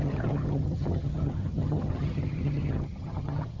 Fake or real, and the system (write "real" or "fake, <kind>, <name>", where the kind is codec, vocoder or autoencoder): fake, vocoder, HiFi-GAN